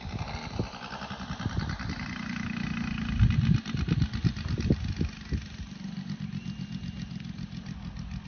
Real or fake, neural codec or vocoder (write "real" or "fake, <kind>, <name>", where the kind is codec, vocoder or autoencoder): real